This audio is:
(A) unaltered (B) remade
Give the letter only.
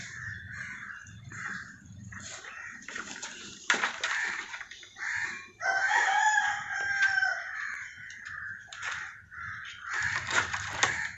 B